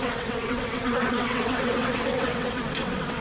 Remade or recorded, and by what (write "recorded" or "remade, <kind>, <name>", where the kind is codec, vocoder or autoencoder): remade, vocoder, WaveNeXt